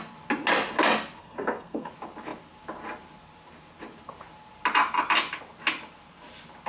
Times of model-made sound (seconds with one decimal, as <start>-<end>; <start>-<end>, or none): 1.2-1.9

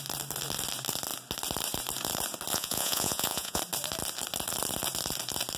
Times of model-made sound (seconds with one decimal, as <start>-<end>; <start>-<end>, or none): 2.5-3.6

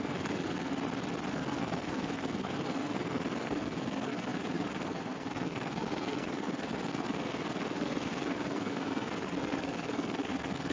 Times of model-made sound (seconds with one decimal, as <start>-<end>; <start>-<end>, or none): 0.0-0.7; 1.3-10.7

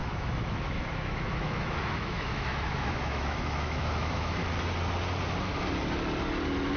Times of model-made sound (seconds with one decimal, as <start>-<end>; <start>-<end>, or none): 0.0-4.4

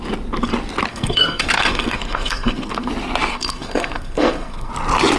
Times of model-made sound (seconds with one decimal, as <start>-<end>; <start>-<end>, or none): 0.9-2.9; 3.3-4.7

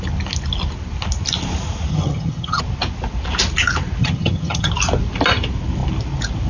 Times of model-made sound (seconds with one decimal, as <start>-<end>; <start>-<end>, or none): 1.9-2.6; 4.0-4.7

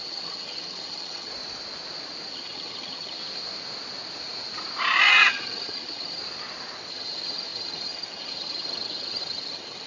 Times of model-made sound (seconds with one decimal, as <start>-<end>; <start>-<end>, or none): 0.0-1.3; 2.3-3.2; 5.1-6.2; 6.9-9.9